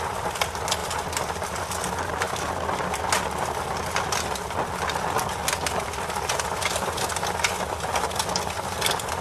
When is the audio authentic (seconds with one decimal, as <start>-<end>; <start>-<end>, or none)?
0.0-9.2